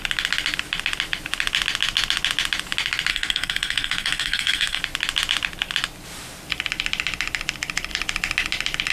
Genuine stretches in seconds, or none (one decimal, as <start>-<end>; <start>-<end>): 0.0-3.1; 4.8-8.9